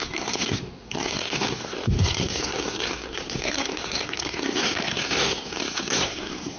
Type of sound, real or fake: fake